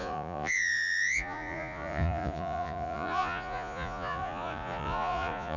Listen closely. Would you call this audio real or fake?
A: fake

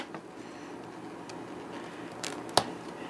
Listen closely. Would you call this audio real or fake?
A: real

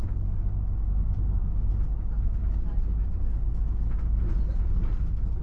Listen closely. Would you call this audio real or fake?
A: real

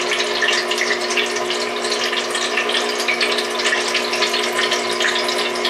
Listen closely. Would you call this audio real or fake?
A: real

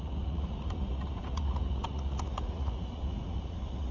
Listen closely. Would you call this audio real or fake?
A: fake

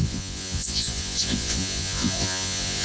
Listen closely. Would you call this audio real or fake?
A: fake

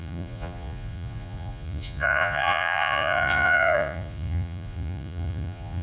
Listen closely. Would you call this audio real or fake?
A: fake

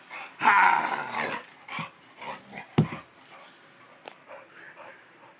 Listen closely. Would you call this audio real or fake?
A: real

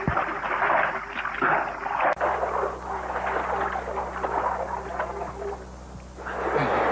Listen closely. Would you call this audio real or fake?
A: real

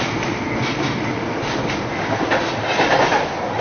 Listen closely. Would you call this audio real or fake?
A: real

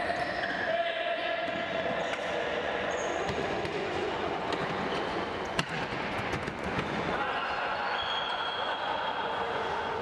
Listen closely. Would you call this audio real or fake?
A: fake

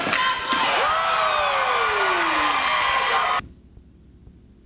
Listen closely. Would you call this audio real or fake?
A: real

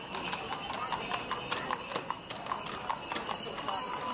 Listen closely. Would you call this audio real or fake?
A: real